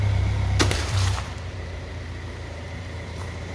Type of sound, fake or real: fake